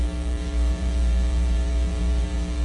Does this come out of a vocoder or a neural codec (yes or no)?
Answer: yes